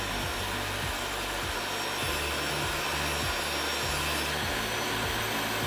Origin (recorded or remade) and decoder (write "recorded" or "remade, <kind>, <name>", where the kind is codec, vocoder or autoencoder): recorded